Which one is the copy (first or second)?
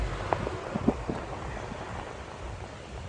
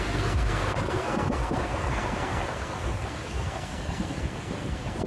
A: second